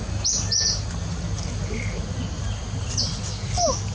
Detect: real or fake real